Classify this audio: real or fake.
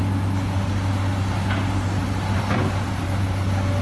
real